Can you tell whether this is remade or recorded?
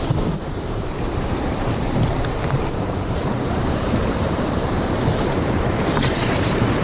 remade